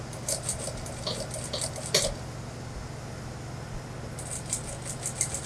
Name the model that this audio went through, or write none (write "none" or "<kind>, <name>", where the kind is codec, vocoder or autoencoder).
none